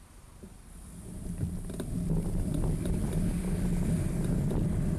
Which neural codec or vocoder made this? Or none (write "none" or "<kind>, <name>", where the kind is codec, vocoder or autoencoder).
none